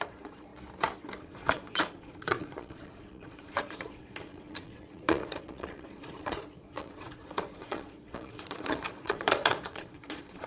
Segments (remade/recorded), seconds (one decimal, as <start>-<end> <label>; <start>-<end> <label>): 0.0-0.5 remade; 0.5-1.2 recorded; 1.2-10.5 remade